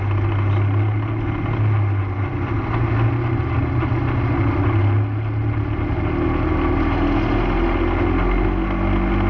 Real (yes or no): yes